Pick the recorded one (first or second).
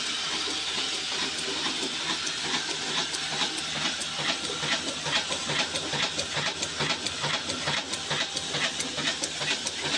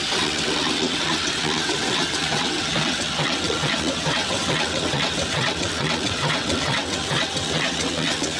first